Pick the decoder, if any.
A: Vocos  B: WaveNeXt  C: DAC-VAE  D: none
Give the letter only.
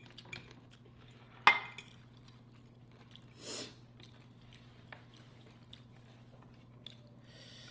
D